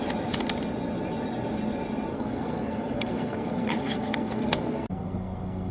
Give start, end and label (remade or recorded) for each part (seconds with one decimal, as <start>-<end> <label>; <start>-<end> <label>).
0.0-2.1 recorded; 2.1-5.7 remade